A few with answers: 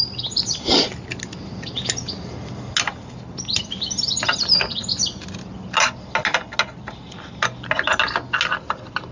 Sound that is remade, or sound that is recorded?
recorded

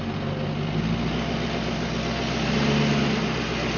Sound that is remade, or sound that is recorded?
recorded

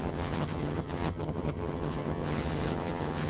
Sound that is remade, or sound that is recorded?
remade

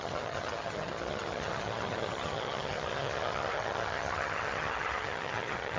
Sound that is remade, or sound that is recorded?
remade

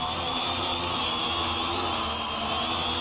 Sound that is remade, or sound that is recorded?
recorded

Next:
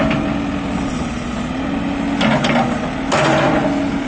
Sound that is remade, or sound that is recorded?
recorded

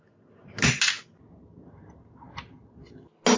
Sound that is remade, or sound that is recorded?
recorded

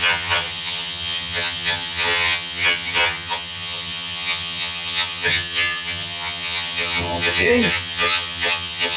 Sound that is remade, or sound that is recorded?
remade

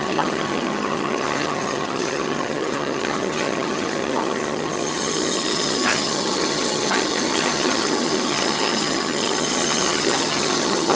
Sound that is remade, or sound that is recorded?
remade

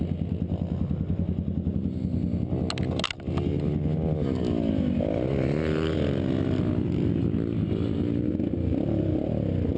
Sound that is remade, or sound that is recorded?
recorded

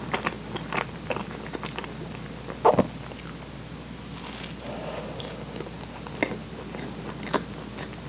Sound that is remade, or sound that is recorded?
recorded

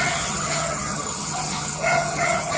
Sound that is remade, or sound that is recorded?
remade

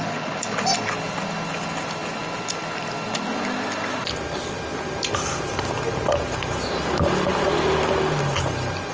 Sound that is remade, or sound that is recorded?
recorded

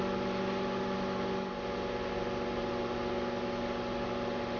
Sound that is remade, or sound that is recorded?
recorded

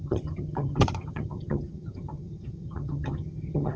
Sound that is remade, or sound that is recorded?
remade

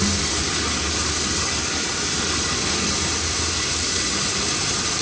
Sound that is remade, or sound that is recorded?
recorded